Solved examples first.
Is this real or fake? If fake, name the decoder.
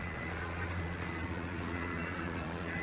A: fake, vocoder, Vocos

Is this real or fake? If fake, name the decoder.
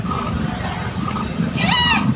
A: fake, vocoder, BigVGAN v2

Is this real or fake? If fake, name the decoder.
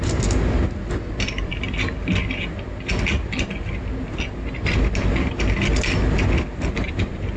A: real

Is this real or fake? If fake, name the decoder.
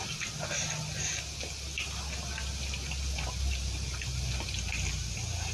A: real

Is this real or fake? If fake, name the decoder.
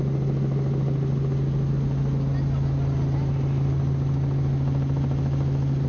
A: real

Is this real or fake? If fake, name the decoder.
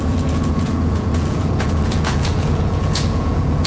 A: fake, vocoder, Vocos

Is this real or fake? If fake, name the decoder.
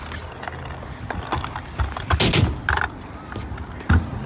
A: real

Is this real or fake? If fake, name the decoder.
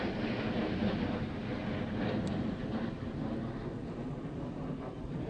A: real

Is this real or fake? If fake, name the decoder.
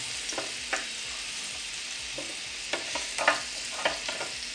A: real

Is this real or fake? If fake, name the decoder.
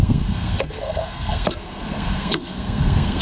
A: fake, codec, SNAC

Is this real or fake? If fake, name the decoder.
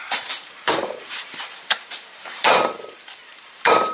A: fake, vocoder, BigVGAN v2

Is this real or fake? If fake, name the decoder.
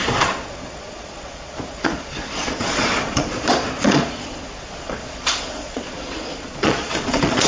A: fake, vocoder, Vocos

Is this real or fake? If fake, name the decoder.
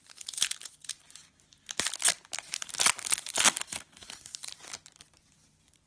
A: fake, vocoder, BigVGAN v2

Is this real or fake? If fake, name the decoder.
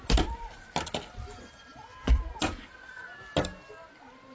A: real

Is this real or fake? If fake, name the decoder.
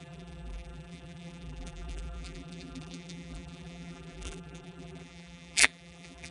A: fake, vocoder, BigVGAN v2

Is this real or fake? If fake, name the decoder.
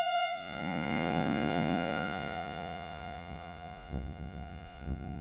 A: fake, vocoder, Vocos